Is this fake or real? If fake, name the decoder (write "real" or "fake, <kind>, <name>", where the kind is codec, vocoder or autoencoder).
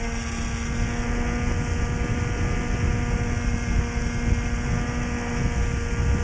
real